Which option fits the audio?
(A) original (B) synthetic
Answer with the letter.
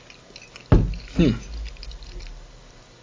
A